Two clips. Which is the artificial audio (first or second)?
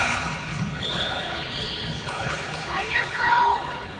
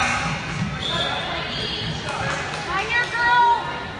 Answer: first